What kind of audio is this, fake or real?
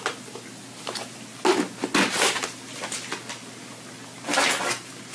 real